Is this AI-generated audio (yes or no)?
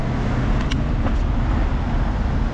no